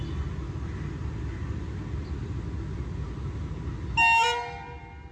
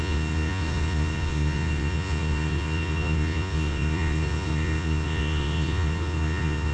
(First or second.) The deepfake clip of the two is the second